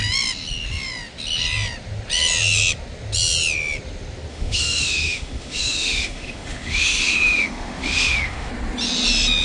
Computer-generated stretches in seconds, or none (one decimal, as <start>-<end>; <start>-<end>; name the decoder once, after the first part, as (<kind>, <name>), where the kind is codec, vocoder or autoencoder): 4.3-8.5 (autoencoder, DAC-VAE)